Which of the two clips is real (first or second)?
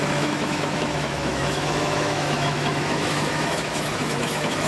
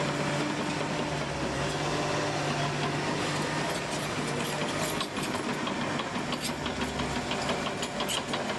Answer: second